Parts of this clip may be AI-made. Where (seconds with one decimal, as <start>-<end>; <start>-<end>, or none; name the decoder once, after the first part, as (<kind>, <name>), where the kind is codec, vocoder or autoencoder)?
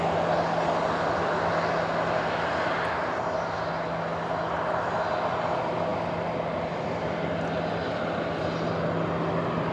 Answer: none